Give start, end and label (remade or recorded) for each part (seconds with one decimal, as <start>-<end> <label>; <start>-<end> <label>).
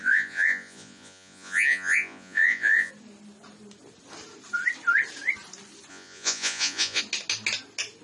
0.0-2.9 remade; 2.9-5.9 recorded; 5.9-7.0 remade; 7.0-8.0 recorded